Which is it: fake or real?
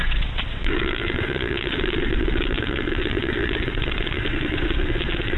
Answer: fake